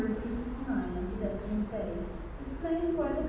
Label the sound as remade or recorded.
recorded